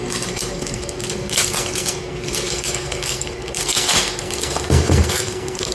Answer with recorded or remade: remade